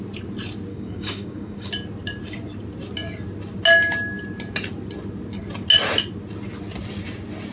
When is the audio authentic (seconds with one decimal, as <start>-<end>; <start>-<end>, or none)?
0.0-0.7; 1.7-7.5

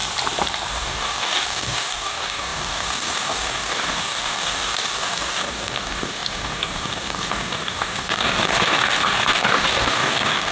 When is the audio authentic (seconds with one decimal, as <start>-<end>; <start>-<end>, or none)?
0.0-0.7

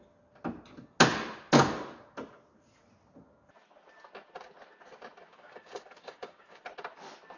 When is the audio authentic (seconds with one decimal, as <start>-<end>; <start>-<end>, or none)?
0.0-5.3; 6.6-7.4

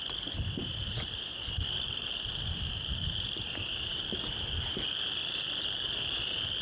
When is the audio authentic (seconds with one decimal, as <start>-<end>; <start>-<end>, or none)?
0.0-6.6

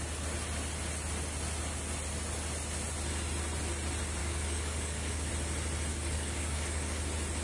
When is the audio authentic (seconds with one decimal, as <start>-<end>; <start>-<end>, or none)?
0.0-4.2; 5.3-5.9; 7.0-7.4

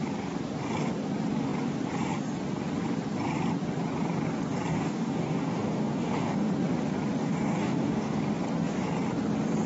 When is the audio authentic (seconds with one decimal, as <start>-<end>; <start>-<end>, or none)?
0.0-4.7; 6.5-7.2; 8.2-9.7

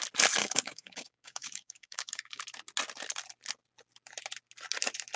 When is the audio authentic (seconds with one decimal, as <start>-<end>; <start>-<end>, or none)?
0.0-0.4; 2.4-5.2